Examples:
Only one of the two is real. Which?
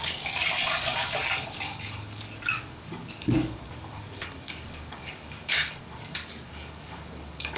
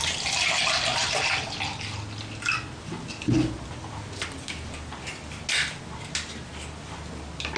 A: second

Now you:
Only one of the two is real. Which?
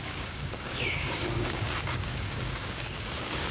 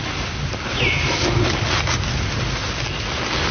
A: second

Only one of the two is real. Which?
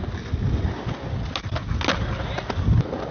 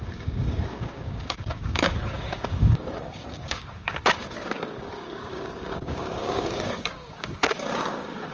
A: first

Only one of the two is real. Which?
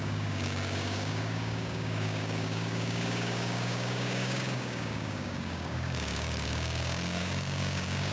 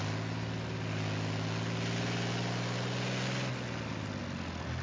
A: second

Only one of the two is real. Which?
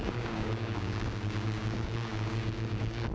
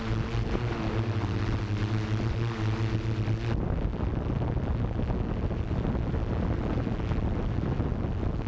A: second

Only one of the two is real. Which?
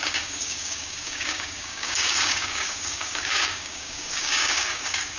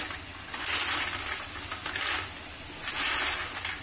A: second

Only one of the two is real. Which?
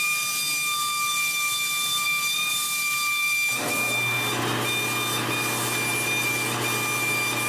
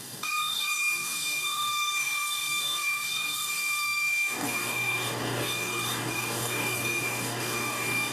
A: first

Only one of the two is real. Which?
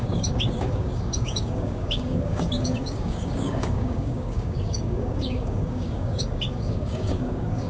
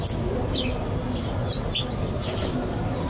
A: second